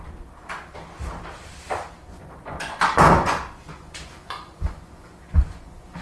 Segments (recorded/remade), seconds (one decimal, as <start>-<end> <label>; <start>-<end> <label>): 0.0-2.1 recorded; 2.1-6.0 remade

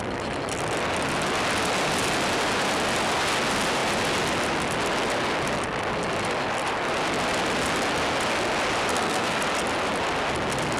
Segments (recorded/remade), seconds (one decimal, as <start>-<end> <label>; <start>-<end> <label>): 0.0-8.9 recorded; 8.9-9.4 remade; 9.4-10.8 recorded

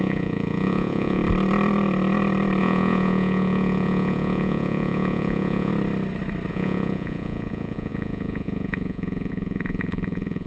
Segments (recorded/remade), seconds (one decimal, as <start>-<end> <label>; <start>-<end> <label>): 0.0-1.2 remade; 1.2-2.6 recorded; 2.6-5.7 remade; 5.7-6.5 recorded; 6.5-10.5 remade

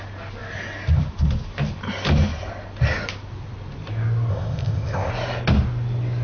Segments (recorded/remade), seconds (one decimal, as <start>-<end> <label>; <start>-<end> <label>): 0.0-4.3 recorded; 4.3-5.1 remade; 5.1-6.2 recorded

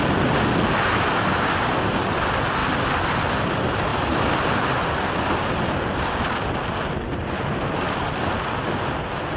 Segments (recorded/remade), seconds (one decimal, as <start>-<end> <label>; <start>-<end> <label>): 0.0-9.4 recorded

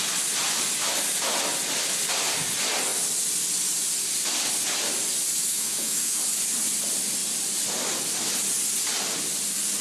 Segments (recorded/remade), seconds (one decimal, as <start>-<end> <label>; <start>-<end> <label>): 0.0-5.5 recorded; 5.5-6.2 remade; 6.2-9.8 recorded

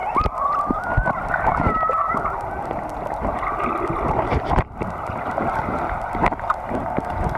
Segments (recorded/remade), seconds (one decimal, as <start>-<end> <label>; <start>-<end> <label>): 0.0-1.5 remade; 1.5-2.0 recorded; 2.0-5.8 remade; 5.8-7.4 recorded